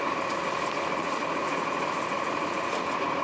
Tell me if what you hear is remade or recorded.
remade